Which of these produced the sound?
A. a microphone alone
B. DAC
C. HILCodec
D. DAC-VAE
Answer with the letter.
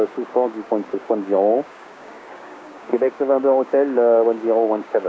B